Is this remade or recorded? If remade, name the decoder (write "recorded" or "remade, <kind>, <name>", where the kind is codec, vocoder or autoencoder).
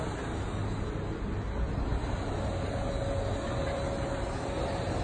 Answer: recorded